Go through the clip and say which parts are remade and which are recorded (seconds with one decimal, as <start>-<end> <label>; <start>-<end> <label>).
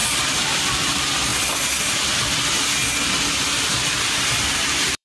0.0-1.3 remade; 1.3-4.3 recorded; 4.3-5.0 remade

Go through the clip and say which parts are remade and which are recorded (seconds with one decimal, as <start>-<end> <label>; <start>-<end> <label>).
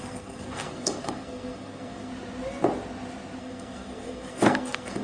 0.0-2.1 remade; 2.1-3.4 recorded; 3.4-5.0 remade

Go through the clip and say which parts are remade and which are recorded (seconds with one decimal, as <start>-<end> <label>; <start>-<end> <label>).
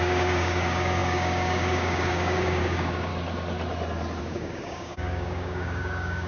0.0-3.1 remade; 3.1-4.2 recorded; 4.2-6.3 remade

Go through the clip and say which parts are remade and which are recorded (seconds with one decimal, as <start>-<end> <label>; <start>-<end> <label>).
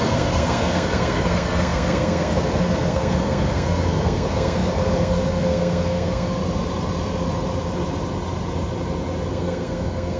0.0-6.4 remade; 6.4-9.3 recorded; 9.3-10.2 remade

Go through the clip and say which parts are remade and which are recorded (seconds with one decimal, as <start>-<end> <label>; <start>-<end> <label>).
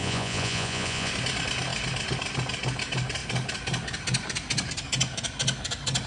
0.0-1.1 remade; 1.1-6.1 recorded